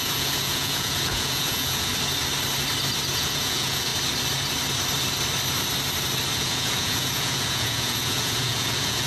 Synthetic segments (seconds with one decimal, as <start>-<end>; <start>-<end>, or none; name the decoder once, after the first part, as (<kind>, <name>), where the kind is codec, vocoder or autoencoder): 0.0-1.9 (vocoder, Vocos); 3.1-3.9; 6.4-9.1